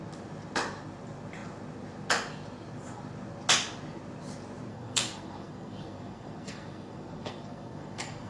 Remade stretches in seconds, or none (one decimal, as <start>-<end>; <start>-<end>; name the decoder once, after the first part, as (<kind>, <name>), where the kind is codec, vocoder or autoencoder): 4.7-8.3 (codec, SNAC)